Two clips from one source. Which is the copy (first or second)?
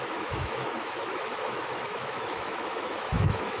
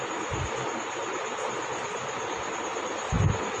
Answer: first